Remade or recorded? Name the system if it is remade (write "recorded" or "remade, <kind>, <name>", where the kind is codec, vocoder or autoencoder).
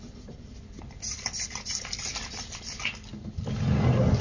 recorded